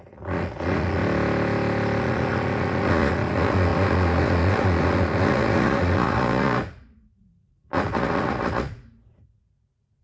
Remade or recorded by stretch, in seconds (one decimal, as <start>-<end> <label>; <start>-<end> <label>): 0.0-1.0 remade; 1.0-2.0 recorded; 2.0-10.0 remade